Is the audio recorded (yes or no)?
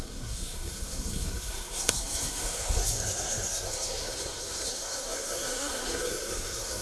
no